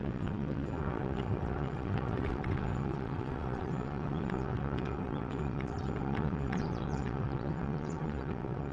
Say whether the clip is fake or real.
fake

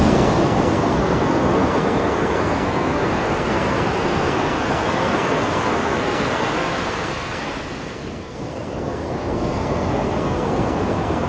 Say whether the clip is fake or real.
fake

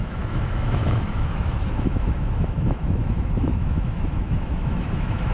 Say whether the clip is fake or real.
fake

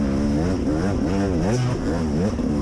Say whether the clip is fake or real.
real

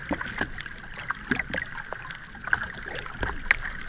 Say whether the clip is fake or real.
real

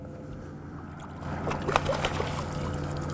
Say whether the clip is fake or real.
real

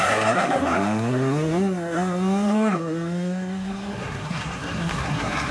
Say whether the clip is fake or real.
fake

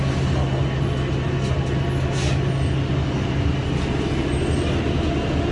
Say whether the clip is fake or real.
real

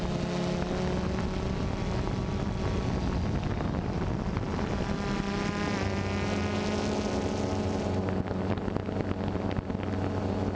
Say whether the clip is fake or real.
real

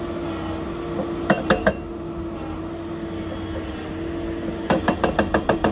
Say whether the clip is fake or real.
real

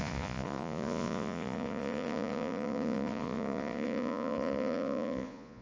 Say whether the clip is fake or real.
fake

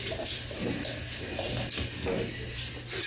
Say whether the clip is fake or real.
real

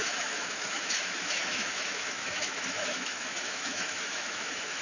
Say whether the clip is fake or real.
fake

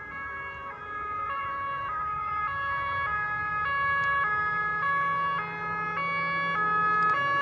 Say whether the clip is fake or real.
real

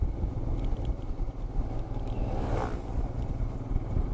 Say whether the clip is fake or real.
real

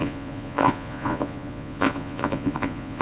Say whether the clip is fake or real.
fake